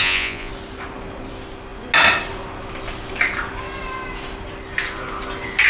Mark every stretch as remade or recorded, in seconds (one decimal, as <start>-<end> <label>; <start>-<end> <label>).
0.0-0.5 remade; 0.5-5.7 recorded

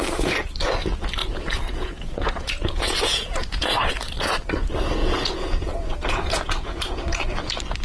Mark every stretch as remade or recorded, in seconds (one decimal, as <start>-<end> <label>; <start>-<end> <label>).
0.0-1.2 recorded; 1.2-3.9 remade; 3.9-5.0 recorded; 5.0-7.0 remade; 7.0-7.8 recorded